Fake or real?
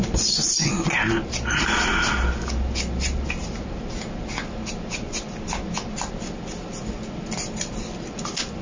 real